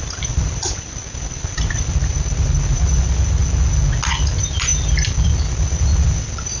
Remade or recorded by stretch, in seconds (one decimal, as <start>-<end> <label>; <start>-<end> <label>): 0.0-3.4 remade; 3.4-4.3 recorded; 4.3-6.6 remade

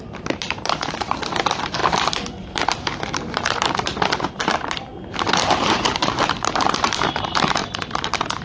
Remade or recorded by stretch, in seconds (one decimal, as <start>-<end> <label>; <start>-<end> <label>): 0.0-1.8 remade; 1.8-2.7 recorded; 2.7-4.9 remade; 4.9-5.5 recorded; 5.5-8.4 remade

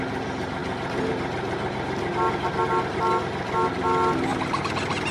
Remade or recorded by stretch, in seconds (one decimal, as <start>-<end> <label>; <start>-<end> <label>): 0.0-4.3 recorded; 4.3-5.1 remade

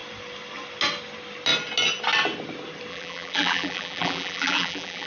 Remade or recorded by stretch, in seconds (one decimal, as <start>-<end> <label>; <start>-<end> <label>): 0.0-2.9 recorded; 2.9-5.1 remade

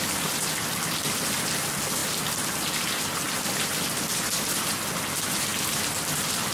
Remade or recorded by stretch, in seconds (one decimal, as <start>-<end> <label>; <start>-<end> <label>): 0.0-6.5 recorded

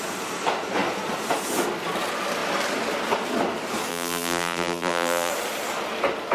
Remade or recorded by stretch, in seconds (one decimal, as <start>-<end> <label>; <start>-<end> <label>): 0.0-3.9 recorded; 3.9-5.3 remade; 5.3-6.3 recorded